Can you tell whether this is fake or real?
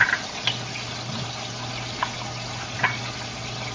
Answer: real